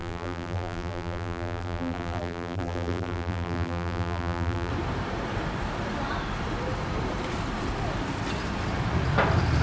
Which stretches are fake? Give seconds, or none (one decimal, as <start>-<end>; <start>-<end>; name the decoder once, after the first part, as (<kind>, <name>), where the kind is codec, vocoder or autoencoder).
0.0-4.7 (vocoder, BigVGAN v2)